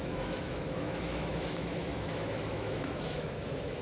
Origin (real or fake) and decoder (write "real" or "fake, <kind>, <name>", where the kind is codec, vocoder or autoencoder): fake, autoencoder, DAC-VAE